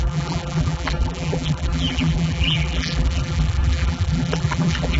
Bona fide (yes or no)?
no